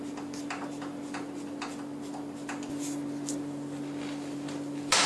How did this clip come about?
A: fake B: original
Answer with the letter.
B